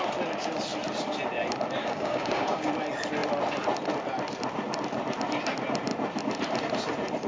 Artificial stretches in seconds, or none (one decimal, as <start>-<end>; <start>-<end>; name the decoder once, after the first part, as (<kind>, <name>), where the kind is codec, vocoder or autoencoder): 1.8-2.7 (codec, DAC)